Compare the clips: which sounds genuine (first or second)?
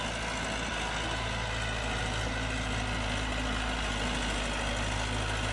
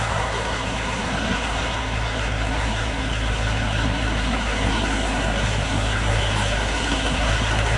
first